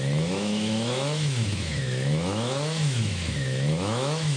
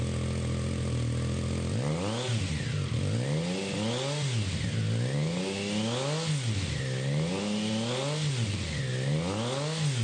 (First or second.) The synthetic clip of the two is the first